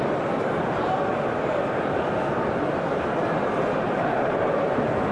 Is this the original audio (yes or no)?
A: yes